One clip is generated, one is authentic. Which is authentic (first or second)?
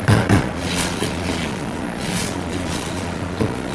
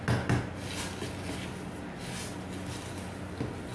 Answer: second